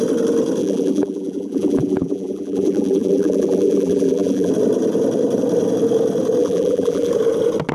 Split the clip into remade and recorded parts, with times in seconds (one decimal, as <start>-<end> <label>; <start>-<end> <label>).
0.0-0.6 recorded; 0.6-4.5 remade; 4.5-6.4 recorded; 6.4-7.1 remade; 7.1-7.7 recorded